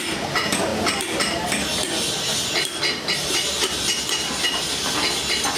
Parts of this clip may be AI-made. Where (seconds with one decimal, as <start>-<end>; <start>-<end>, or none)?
none